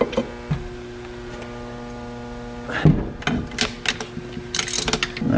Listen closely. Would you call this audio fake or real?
real